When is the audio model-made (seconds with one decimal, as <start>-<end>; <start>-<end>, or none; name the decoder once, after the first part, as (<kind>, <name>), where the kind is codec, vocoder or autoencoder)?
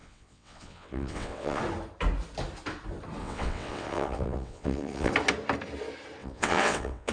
0.0-1.6 (vocoder, WaveNeXt); 3.2-5.1; 6.2-7.1